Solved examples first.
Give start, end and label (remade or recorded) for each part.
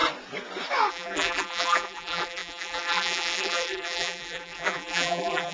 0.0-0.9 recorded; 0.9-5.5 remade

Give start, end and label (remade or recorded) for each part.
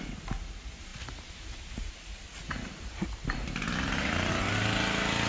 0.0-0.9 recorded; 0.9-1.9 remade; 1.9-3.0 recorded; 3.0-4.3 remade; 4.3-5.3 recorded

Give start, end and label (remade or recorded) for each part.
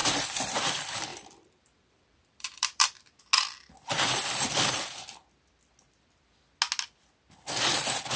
0.0-0.7 remade; 0.7-1.1 recorded; 1.1-3.2 remade; 3.2-8.2 recorded